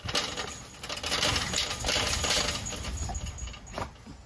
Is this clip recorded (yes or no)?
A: yes